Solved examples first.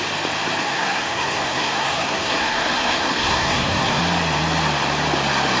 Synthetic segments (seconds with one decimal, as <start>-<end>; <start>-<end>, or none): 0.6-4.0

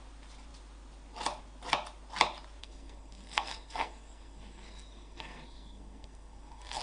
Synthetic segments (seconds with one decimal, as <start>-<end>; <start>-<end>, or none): 2.6-6.8

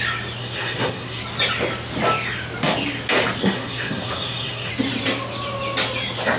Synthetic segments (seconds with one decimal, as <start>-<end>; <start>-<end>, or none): 0.4-1.2; 3.4-4.7

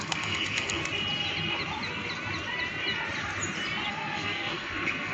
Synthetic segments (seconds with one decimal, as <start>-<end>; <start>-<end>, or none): 0.0-0.8; 3.9-5.1